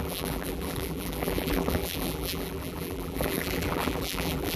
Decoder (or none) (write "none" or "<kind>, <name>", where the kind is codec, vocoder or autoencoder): vocoder, BigVGAN v2